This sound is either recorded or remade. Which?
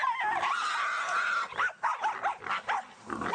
recorded